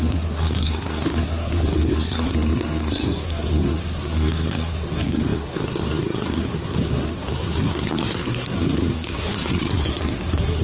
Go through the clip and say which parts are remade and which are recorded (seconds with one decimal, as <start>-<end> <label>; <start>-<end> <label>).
0.0-10.6 remade